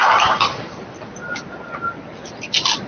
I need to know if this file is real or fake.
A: real